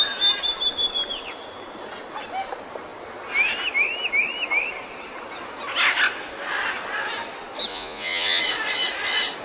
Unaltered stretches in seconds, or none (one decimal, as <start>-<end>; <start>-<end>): 0.0-7.7; 8.4-9.4

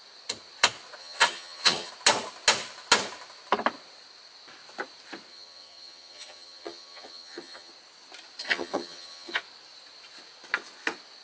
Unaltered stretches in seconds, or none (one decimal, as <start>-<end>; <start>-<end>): 0.0-1.0; 1.9-5.3; 7.7-8.4; 9.4-11.2

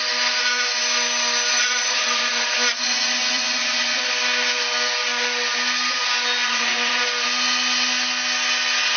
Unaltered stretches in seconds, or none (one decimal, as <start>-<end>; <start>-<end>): 0.0-1.6; 4.0-6.4; 6.9-9.0